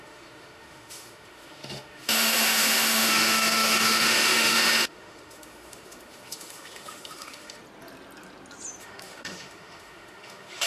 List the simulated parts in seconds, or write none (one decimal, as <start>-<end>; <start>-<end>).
0.0-7.6; 8.8-10.7